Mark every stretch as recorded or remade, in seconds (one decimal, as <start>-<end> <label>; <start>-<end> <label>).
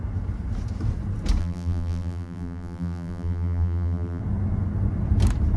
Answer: 0.0-1.4 recorded; 1.4-4.2 remade; 4.2-5.6 recorded